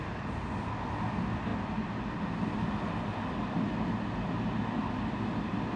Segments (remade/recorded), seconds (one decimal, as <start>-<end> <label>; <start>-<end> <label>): 0.0-5.8 recorded